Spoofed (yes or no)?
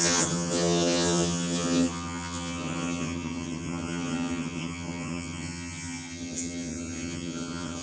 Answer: yes